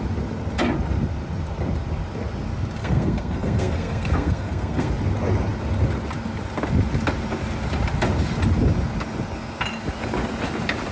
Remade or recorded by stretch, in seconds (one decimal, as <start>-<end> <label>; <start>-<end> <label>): 0.0-2.8 recorded; 2.8-4.9 remade; 4.9-10.9 recorded